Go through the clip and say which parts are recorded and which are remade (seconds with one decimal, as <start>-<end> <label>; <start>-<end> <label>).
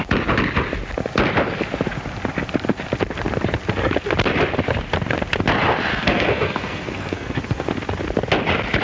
0.0-5.9 recorded; 5.9-7.7 remade; 7.7-8.8 recorded